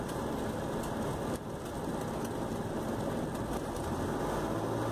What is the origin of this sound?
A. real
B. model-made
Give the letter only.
A